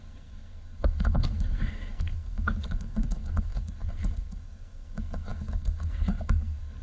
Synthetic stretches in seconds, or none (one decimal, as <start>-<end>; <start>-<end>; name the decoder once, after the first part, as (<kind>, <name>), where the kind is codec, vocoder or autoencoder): 0.0-6.8 (codec, SNAC)